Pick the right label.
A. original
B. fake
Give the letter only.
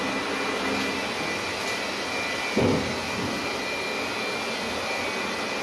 A